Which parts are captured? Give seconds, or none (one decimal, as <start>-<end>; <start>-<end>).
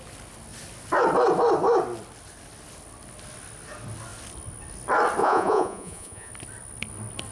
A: 0.0-5.2; 6.3-7.3